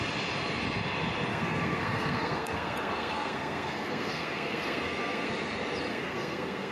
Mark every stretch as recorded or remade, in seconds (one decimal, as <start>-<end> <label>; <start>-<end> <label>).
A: 0.0-1.3 recorded; 1.3-5.3 remade; 5.3-5.9 recorded; 5.9-6.7 remade